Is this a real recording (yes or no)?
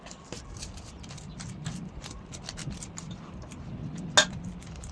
yes